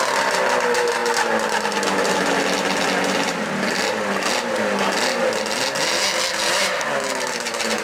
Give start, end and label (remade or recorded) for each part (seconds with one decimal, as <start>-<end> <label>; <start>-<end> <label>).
0.0-7.8 recorded